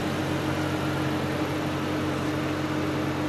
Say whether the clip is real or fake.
real